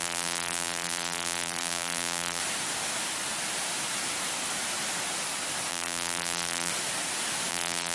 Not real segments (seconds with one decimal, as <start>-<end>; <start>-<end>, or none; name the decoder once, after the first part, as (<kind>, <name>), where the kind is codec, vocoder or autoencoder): 0.0-2.4 (vocoder, BigVGAN v2); 5.7-6.7; 7.5-7.9